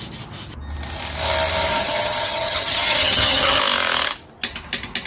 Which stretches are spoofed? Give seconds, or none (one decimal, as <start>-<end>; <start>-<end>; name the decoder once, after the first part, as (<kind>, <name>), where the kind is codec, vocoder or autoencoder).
1.7-3.6 (vocoder, HiFi-GAN)